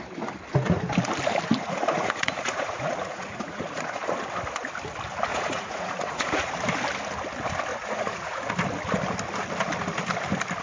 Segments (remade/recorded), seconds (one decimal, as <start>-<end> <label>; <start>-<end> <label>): 0.0-1.5 recorded; 1.5-4.0 remade; 4.0-5.3 recorded; 5.3-6.5 remade; 6.5-7.7 recorded; 7.7-8.5 remade; 8.5-10.6 recorded